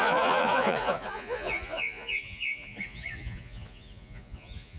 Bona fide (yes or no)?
no